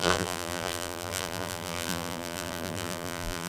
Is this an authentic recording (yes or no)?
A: no